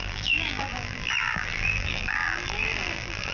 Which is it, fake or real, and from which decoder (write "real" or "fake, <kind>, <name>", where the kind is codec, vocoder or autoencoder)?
fake, vocoder, BigVGAN v2